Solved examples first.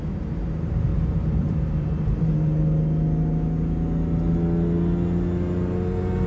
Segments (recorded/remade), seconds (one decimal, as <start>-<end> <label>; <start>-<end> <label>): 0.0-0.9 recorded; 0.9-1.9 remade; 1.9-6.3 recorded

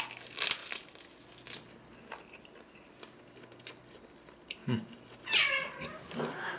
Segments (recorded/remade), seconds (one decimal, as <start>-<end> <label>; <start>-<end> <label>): 0.0-0.6 recorded; 0.6-1.2 remade; 1.2-4.6 recorded; 4.6-6.6 remade

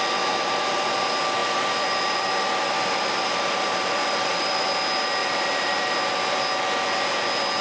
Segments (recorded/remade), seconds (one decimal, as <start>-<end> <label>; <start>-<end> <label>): 0.0-1.4 recorded; 1.4-4.7 remade; 4.7-5.2 recorded; 5.2-5.9 remade; 5.9-7.6 recorded

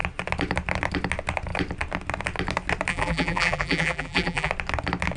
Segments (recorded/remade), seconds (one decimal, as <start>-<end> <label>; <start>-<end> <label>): 0.0-2.9 recorded; 2.9-4.5 remade; 4.5-5.2 recorded

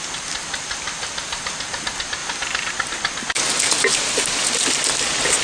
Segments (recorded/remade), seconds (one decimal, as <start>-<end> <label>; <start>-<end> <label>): 0.0-5.4 recorded

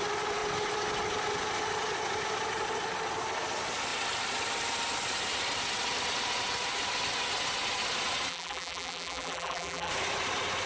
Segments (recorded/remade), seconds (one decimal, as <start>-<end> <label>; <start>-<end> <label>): 0.0-8.3 recorded; 8.3-9.9 remade; 9.9-10.7 recorded